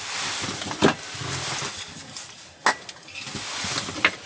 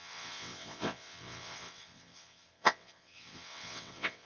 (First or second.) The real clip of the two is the first